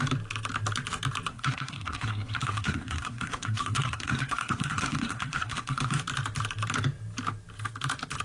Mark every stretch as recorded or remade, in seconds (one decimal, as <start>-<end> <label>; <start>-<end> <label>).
0.0-1.3 recorded; 1.3-6.0 remade; 6.0-8.2 recorded

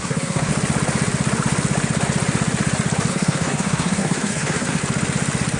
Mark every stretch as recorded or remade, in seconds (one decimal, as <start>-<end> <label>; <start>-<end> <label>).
0.0-0.5 remade; 0.5-3.1 recorded; 3.1-4.8 remade; 4.8-5.6 recorded

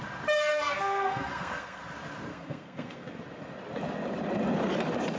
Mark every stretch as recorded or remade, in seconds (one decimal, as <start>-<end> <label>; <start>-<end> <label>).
0.0-0.5 recorded; 0.5-1.8 remade; 1.8-2.3 recorded; 2.3-3.2 remade; 3.2-5.2 recorded

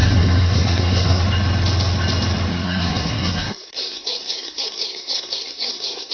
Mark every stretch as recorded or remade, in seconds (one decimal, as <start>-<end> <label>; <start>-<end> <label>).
0.0-1.2 remade; 1.2-2.5 recorded; 2.5-6.1 remade